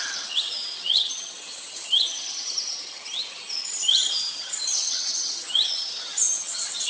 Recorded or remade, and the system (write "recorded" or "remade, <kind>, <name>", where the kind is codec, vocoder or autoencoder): remade, vocoder, HiFi-GAN